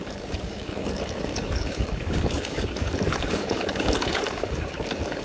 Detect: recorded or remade remade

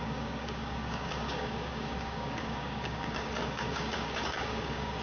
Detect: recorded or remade remade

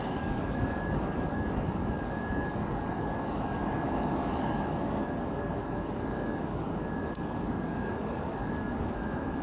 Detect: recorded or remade remade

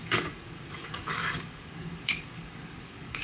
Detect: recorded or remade remade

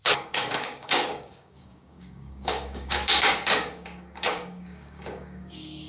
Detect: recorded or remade remade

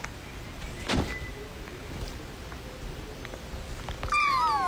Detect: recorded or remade recorded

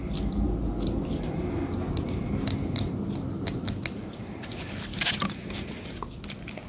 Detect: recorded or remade recorded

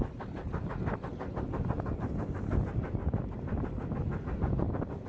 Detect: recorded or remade recorded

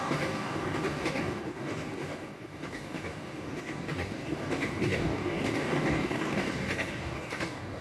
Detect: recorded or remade remade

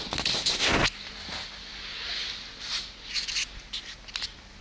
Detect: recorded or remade recorded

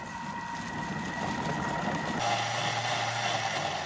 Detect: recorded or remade recorded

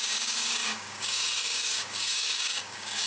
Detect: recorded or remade remade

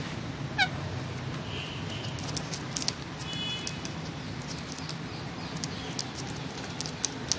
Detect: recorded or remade recorded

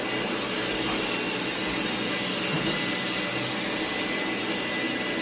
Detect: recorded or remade recorded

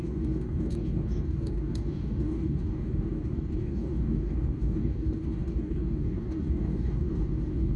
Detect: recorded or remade remade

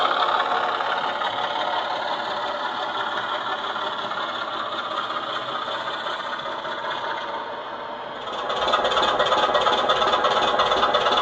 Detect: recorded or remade recorded